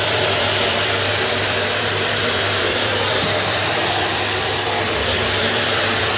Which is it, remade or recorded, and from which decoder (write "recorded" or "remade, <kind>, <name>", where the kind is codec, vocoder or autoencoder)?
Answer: remade, vocoder, BigVGAN v2